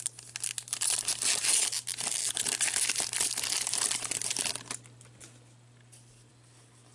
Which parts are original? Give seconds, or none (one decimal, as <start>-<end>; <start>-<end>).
0.0-6.9